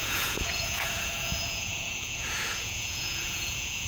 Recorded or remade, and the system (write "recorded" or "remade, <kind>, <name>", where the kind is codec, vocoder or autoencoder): remade, vocoder, Vocos